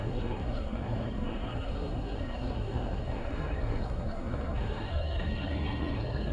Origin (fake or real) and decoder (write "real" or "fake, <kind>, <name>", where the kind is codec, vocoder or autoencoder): fake, codec, SNAC